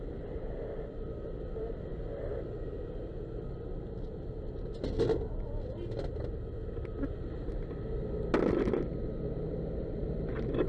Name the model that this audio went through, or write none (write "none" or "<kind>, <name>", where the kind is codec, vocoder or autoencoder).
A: none